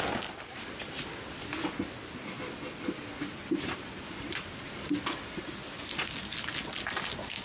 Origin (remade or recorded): recorded